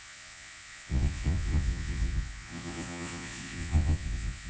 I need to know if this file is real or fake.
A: fake